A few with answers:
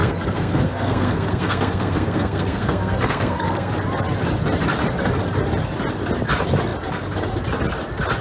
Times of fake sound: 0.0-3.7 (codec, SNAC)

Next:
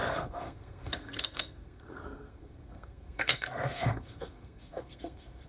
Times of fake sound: 0.0-5.5 (codec, SNAC)

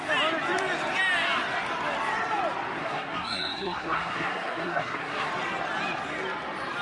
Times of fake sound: 2.8-5.3 (codec, SNAC)

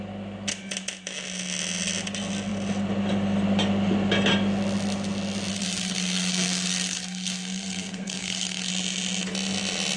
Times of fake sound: 5.5-8.7 (codec, SNAC)

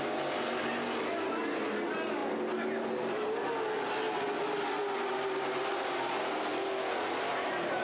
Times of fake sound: none

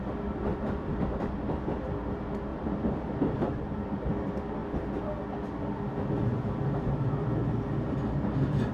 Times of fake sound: 0.5-1.3 (vocoder, BigVGAN v2); 2.5-4.1

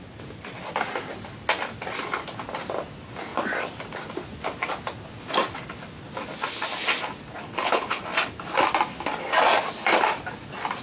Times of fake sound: 7.4-8.0 (codec, HILCodec)